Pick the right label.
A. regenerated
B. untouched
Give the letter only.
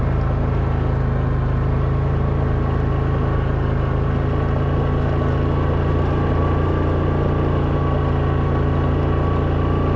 B